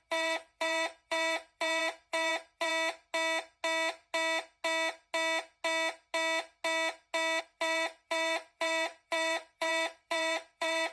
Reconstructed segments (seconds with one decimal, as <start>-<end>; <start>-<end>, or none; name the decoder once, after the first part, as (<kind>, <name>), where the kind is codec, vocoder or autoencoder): 0.0-2.7 (vocoder, BigVGAN v2); 7.4-10.9